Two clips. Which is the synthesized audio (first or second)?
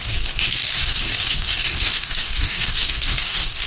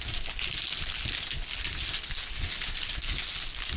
first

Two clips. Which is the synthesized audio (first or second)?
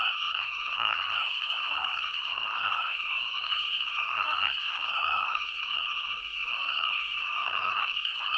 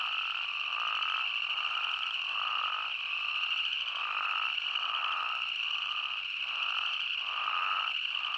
first